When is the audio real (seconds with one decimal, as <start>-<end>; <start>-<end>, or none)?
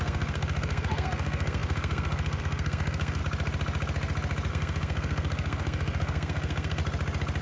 3.2-4.5; 6.8-7.4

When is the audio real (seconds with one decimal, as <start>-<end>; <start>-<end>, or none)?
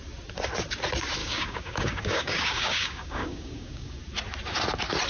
0.0-1.2; 4.0-5.1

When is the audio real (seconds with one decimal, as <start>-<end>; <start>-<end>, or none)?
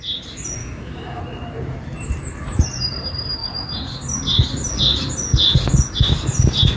0.0-0.6; 1.2-6.8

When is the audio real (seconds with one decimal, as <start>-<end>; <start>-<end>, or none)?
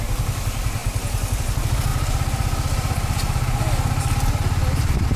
0.0-5.2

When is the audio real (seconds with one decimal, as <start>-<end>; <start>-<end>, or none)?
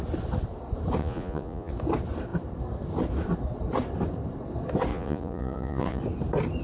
0.0-1.0; 1.7-4.9; 6.0-6.6